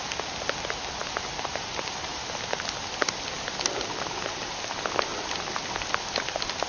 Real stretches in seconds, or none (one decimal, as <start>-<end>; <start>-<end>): 0.0-2.1; 3.6-5.1; 5.7-6.7